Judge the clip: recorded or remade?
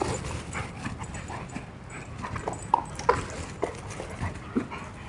recorded